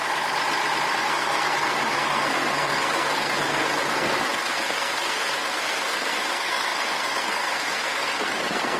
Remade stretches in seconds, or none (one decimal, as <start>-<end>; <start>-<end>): 0.9-8.8